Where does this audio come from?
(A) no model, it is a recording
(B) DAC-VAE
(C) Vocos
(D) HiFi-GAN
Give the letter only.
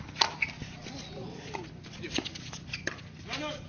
A